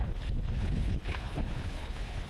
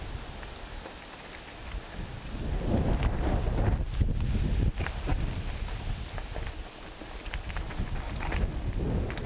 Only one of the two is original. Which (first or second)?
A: second